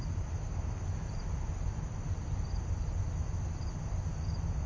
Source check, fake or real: real